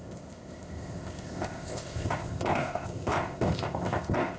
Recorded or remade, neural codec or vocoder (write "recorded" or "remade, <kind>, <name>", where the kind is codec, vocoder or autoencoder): remade, codec, ZipCodec